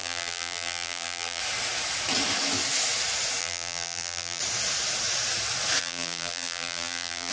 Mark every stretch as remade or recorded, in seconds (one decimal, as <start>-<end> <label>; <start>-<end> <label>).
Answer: 0.0-1.4 remade; 1.4-3.4 recorded; 3.4-4.4 remade; 4.4-5.8 recorded; 5.8-7.3 remade